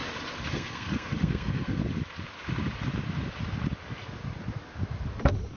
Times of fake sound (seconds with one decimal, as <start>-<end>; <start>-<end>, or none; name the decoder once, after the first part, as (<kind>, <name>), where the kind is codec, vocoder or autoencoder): 0.5-1.8 (codec, SNAC)